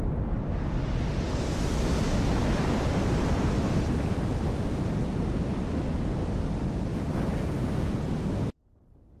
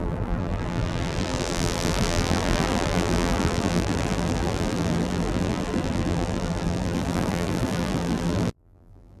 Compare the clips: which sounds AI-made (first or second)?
second